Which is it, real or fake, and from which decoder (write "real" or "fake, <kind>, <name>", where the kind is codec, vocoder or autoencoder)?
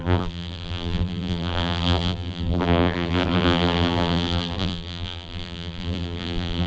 fake, vocoder, BigVGAN v2